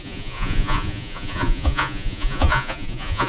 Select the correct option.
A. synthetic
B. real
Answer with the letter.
A